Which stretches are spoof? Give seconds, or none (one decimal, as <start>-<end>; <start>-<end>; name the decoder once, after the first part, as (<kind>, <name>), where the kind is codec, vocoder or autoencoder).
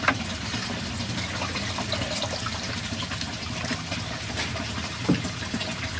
2.5-3.7 (vocoder, BigVGAN v2); 4.5-6.0